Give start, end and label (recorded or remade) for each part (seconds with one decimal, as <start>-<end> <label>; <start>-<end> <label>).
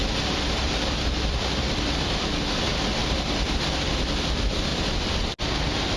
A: 0.0-1.3 remade; 1.3-3.0 recorded; 3.0-4.0 remade; 4.0-6.0 recorded